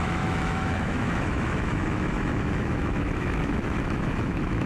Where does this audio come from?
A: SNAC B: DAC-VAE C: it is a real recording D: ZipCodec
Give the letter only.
B